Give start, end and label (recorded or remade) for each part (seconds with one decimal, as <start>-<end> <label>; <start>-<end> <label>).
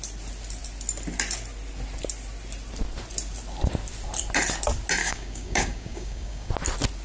0.0-5.0 recorded; 5.0-6.5 remade; 6.5-7.0 recorded